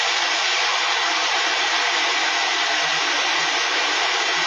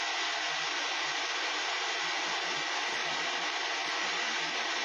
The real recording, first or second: second